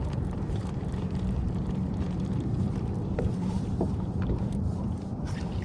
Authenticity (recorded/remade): remade